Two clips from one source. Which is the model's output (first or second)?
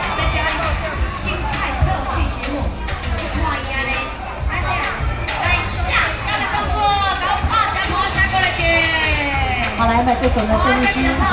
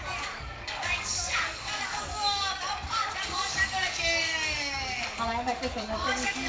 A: second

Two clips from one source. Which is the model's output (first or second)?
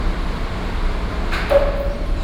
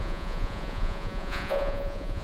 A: second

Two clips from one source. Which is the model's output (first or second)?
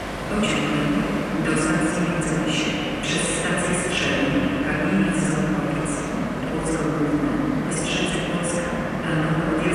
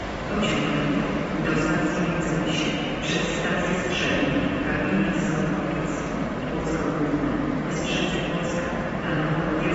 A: second